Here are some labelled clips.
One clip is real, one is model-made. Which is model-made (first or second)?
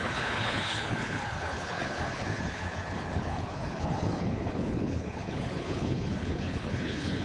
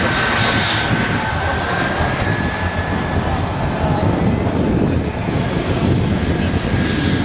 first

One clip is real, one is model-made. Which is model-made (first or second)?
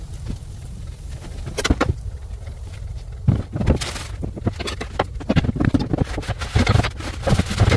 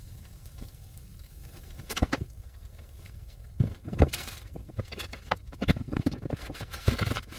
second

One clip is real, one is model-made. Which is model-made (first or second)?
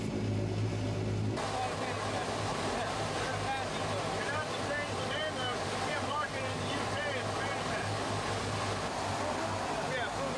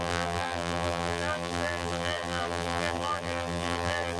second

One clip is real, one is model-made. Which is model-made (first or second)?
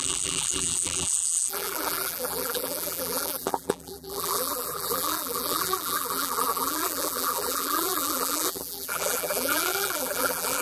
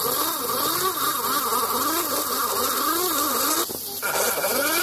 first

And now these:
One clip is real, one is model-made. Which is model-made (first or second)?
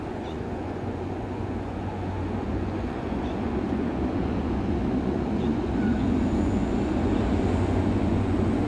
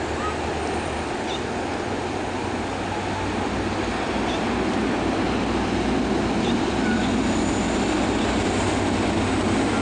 first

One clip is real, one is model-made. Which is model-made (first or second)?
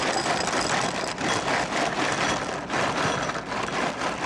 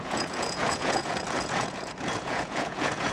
second